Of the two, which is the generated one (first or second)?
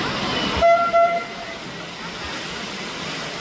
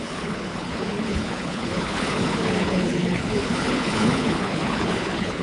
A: second